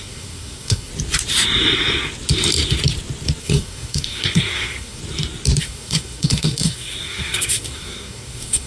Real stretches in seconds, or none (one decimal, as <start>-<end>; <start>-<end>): 0.9-3.4; 5.0-5.6

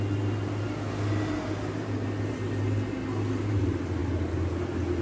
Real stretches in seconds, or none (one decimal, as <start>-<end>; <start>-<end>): 0.0-5.0

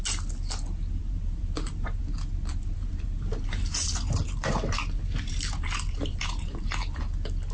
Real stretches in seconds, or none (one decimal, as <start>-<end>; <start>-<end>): 0.0-1.0; 2.0-2.5; 7.0-7.5

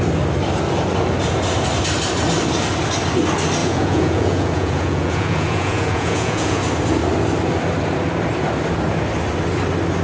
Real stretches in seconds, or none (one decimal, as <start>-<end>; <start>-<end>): 0.0-3.6; 6.6-10.0